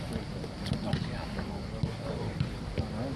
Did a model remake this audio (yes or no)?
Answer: no